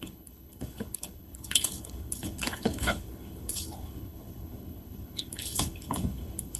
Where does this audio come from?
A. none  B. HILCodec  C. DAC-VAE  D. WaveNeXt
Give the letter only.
B